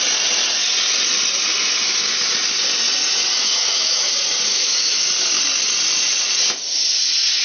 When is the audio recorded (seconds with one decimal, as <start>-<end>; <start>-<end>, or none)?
0.0-3.4; 4.1-4.5; 5.1-7.4